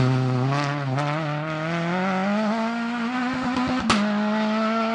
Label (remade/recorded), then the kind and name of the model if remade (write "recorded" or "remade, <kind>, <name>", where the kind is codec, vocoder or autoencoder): recorded